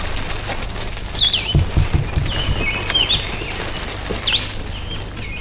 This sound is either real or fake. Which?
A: real